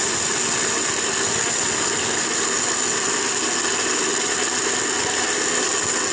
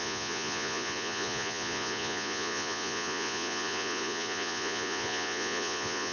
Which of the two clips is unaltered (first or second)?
first